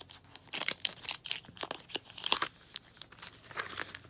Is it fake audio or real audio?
real